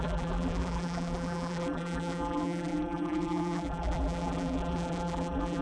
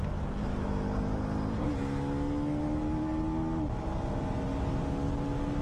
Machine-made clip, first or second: first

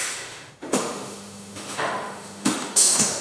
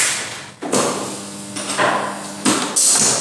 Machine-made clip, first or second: first